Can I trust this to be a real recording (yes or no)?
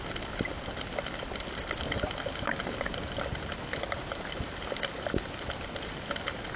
yes